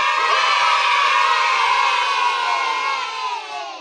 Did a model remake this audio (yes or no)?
no